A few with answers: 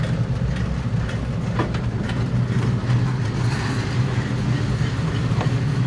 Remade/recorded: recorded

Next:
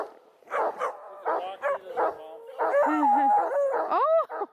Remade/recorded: recorded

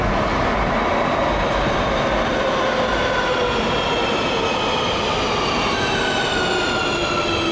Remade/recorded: recorded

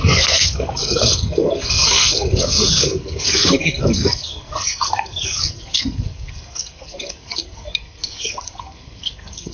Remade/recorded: remade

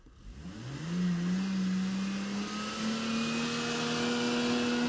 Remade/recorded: recorded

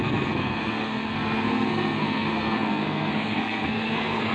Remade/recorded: remade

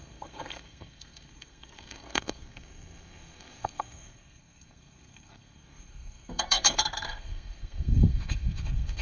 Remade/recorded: remade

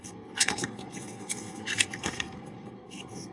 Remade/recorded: remade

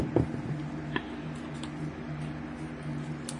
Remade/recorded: recorded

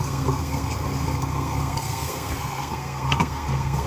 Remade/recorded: remade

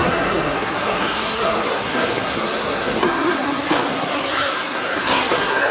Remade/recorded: remade